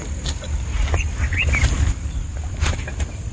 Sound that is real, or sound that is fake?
real